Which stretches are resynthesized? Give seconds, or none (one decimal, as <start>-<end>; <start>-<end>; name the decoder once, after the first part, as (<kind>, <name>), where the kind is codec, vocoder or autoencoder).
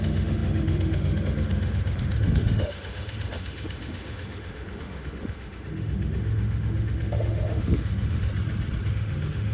0.0-8.3 (autoencoder, DAC-VAE); 8.9-9.5